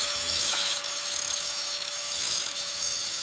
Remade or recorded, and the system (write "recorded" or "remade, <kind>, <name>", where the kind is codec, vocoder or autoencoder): remade, autoencoder, DAC-VAE